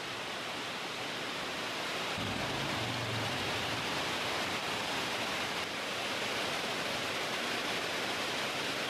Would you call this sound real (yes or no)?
no